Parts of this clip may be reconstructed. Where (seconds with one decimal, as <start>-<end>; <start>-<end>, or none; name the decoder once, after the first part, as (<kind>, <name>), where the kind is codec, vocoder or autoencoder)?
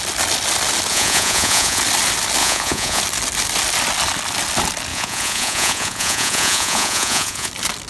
0.9-1.8 (vocoder, Vocos); 2.4-3.0; 4.9-7.5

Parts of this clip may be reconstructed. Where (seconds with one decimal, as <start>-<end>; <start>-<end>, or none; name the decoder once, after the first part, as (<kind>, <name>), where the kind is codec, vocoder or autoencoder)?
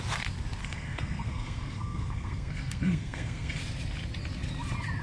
0.6-3.6 (codec, SNAC)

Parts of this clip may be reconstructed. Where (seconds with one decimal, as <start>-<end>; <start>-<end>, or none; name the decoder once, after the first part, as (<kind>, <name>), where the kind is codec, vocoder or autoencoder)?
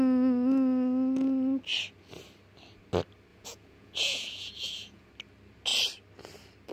3.3-5.1 (vocoder, Vocos)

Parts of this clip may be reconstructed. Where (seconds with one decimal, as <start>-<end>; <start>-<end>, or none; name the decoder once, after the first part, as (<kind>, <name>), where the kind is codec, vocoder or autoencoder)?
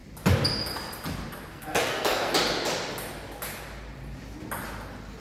1.5-2.3 (codec, SNAC)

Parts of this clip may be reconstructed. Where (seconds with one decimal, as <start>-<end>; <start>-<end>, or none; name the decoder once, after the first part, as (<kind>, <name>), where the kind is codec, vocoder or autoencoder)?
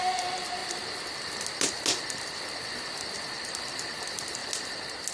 none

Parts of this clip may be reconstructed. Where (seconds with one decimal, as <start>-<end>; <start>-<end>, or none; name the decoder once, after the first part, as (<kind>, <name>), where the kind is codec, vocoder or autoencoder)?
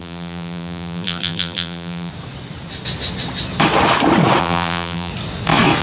0.0-2.1 (vocoder, BigVGAN v2); 4.4-5.1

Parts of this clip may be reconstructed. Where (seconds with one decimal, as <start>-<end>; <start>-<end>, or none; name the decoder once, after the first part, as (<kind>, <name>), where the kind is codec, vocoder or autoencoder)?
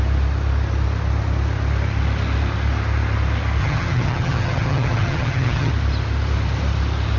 3.6-5.7 (vocoder, HiFi-GAN)